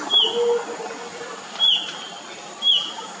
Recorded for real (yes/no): yes